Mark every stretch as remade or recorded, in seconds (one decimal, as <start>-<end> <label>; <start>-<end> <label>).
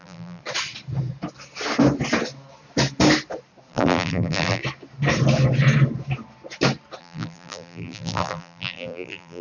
0.0-0.4 remade; 0.4-3.7 recorded; 3.7-4.6 remade; 4.6-7.0 recorded; 7.0-9.4 remade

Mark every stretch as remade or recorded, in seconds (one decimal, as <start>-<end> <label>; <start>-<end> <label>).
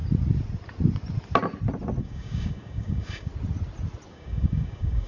0.0-2.0 recorded; 2.0-3.3 remade; 3.3-4.1 recorded; 4.1-5.1 remade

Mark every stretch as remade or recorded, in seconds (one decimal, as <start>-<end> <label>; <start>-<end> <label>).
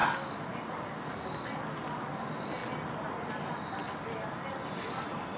0.0-5.4 recorded